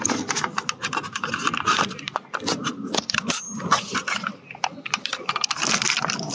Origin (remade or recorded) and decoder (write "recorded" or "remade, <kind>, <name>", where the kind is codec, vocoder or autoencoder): recorded